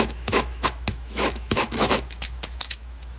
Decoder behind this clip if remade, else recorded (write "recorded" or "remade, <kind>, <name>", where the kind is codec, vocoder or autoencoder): remade, autoencoder, DAC-VAE